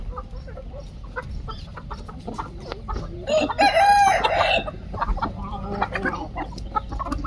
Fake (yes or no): no